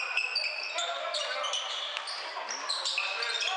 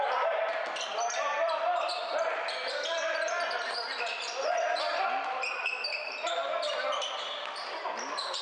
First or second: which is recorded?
first